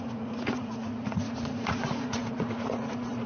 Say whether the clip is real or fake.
fake